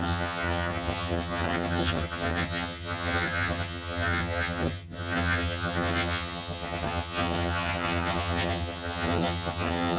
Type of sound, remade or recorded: remade